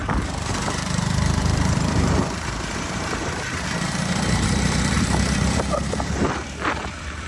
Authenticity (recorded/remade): remade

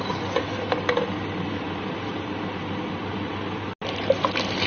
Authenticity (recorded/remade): recorded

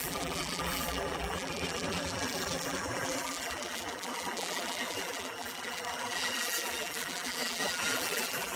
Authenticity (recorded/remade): remade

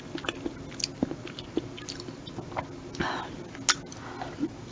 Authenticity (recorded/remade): recorded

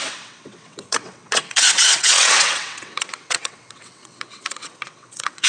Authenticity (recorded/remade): remade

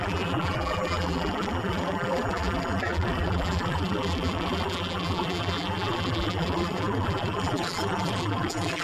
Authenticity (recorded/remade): remade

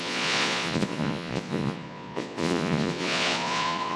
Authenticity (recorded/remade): remade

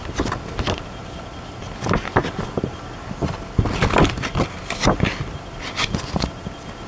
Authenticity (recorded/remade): recorded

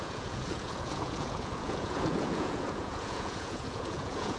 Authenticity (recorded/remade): remade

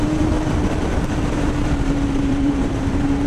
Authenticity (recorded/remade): remade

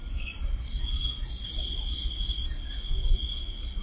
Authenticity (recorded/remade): recorded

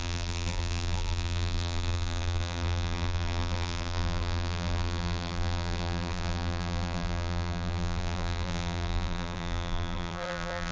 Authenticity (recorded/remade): remade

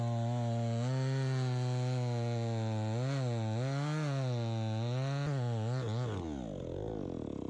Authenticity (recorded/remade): recorded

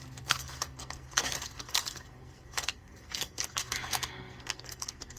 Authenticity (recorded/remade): remade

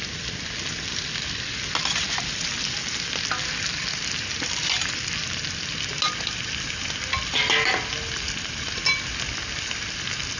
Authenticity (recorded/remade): recorded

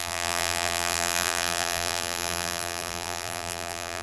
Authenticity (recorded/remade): remade